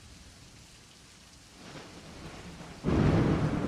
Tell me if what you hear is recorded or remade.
recorded